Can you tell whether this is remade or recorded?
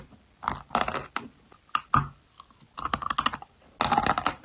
recorded